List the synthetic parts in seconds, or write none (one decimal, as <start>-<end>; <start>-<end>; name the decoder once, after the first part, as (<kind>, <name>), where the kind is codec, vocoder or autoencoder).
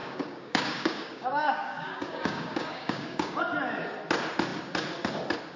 0.0-3.4 (codec, DAC)